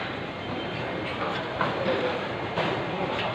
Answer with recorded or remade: remade